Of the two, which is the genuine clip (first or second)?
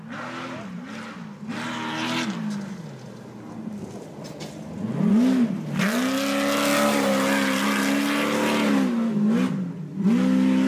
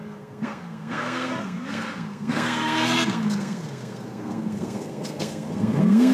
first